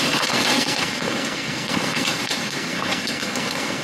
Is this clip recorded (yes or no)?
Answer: no